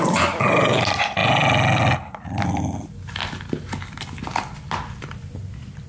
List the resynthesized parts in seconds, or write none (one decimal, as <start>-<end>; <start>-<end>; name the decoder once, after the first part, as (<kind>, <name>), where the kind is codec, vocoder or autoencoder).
none